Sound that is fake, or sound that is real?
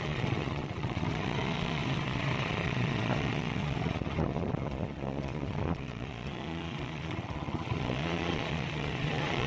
fake